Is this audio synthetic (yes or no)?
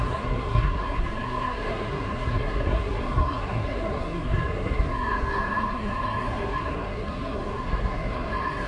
yes